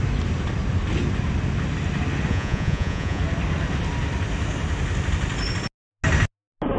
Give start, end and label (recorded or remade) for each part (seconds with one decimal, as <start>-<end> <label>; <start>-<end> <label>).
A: 0.0-2.3 recorded; 2.3-3.2 remade; 3.2-6.8 recorded